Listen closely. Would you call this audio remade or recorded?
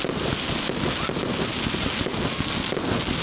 recorded